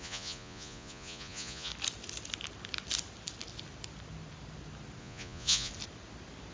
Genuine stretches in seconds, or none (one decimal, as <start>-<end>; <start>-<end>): 1.7-5.0; 5.7-6.5